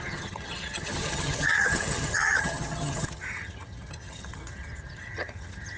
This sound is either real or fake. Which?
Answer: fake